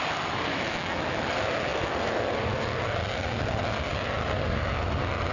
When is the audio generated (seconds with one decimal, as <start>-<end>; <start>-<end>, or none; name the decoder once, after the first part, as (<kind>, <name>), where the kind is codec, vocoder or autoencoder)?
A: 0.5-1.2 (autoencoder, DAC-VAE)